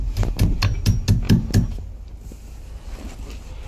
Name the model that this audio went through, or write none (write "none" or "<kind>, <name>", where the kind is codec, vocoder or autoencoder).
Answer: none